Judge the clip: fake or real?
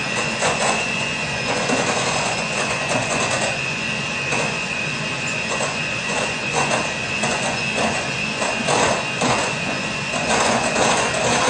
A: fake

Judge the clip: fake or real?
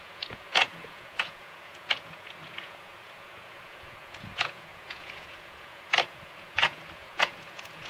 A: fake